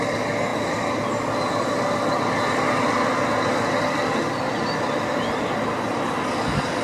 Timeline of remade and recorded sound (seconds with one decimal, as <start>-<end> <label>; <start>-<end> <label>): 0.0-6.8 recorded